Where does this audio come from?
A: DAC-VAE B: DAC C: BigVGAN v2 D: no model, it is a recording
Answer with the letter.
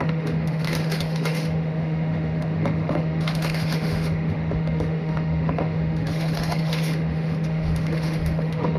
A